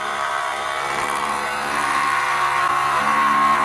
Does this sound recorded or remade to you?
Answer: remade